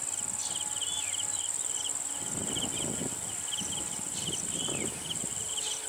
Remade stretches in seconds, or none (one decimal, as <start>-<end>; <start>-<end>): none